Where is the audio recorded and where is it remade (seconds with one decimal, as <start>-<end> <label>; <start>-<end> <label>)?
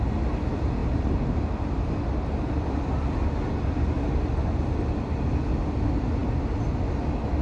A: 0.0-7.4 recorded